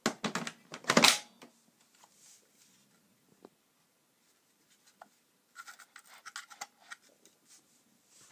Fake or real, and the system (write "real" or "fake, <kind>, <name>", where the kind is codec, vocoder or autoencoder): real